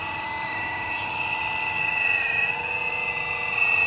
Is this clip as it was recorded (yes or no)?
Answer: yes